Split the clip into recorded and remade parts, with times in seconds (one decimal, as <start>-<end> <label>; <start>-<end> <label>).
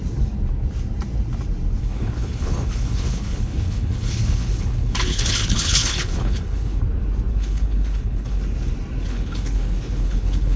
0.0-1.8 recorded; 1.8-6.8 remade; 6.8-7.3 recorded; 7.3-8.4 remade; 8.4-9.1 recorded; 9.1-10.6 remade